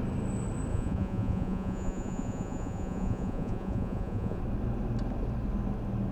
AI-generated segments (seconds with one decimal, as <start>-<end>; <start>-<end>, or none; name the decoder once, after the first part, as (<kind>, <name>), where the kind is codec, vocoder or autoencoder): 0.7-4.4 (vocoder, Vocos)